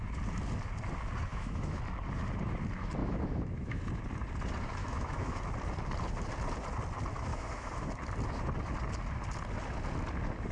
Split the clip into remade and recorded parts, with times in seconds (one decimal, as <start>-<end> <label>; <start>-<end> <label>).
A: 0.0-1.3 recorded; 1.3-1.8 remade; 1.8-3.0 recorded; 3.0-3.8 remade; 3.8-4.8 recorded; 4.8-5.4 remade; 5.4-7.3 recorded; 7.3-7.9 remade; 7.9-10.5 recorded